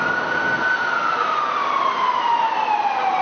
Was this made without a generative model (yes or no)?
yes